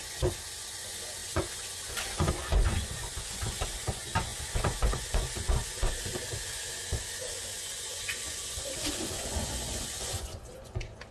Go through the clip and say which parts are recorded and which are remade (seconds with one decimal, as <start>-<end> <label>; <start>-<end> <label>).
0.0-11.1 remade